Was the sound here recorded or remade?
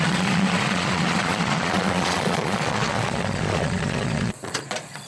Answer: remade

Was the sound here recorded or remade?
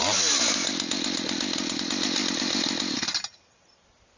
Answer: recorded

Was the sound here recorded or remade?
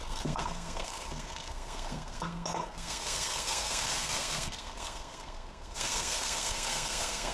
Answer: remade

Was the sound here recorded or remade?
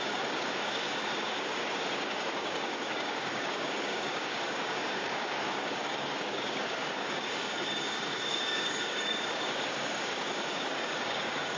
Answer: remade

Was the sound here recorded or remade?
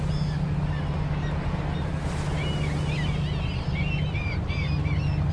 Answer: recorded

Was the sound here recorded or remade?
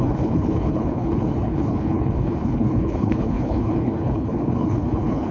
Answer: remade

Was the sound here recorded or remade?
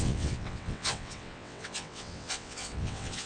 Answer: remade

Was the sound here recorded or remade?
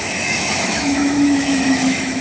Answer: remade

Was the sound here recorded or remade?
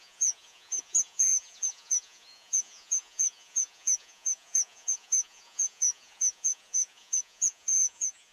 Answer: remade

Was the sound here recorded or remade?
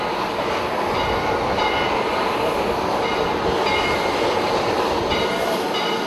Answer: recorded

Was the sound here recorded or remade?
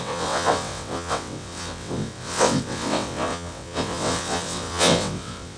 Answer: remade